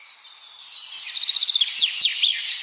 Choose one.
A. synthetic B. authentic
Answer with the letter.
B